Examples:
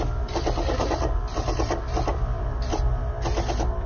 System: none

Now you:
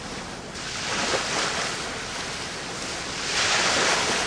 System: none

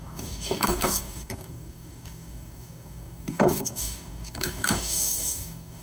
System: codec, DAC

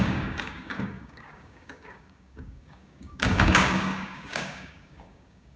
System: codec, DAC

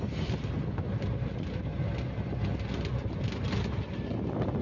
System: none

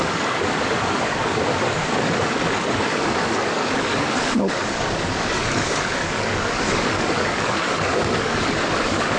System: codec, DAC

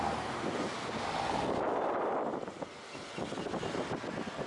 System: none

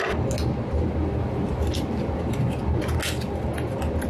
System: none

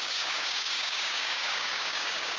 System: codec, DAC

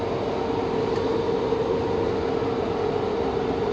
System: none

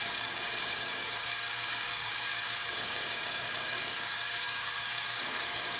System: codec, DAC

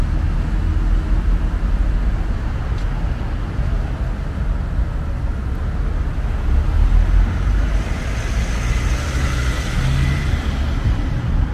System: none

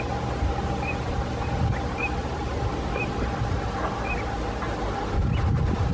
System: none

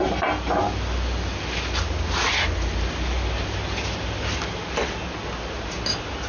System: none